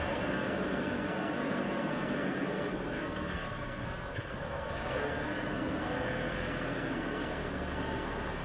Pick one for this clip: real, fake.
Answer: fake